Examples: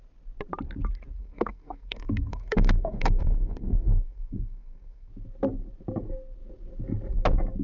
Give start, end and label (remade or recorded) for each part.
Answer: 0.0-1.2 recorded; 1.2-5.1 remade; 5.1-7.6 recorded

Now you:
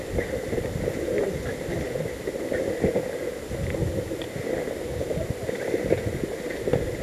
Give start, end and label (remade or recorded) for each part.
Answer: 0.0-7.0 recorded

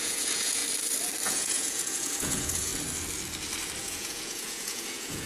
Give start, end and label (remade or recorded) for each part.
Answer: 0.0-0.6 remade; 0.6-1.2 recorded; 1.2-2.7 remade; 2.7-3.8 recorded; 3.8-5.3 remade

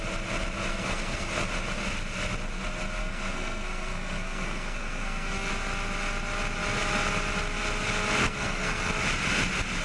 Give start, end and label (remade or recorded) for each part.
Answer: 0.0-0.7 recorded; 0.7-1.3 remade; 1.3-3.0 recorded; 3.0-5.5 remade; 5.5-8.2 recorded; 8.2-8.9 remade; 8.9-9.8 recorded

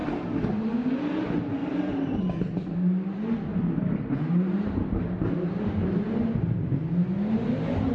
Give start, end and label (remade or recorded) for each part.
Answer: 0.0-1.6 recorded; 1.6-2.2 remade; 2.2-3.5 recorded; 3.5-5.5 remade; 5.5-7.9 recorded

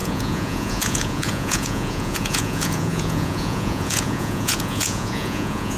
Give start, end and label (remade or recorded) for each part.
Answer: 0.0-5.8 remade

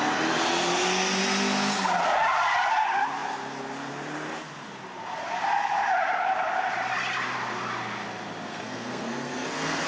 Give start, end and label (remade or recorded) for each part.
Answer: 0.0-8.5 recorded; 8.5-9.9 remade